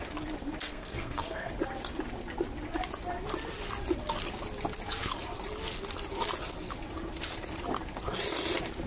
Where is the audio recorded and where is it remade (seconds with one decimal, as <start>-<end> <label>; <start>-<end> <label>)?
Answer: 0.0-0.6 recorded; 0.6-1.5 remade; 1.5-8.9 recorded